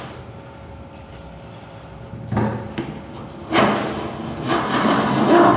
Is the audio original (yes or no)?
yes